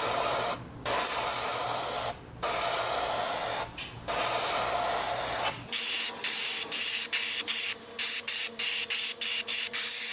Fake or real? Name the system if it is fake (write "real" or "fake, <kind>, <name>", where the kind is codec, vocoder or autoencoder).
real